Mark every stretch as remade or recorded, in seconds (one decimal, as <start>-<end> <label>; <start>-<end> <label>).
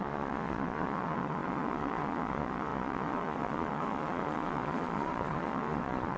0.0-6.2 remade